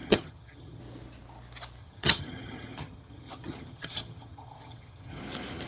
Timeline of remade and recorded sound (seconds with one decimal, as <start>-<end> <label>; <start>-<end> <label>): 0.0-0.8 remade; 0.8-1.8 recorded; 1.8-5.2 remade; 5.2-5.7 recorded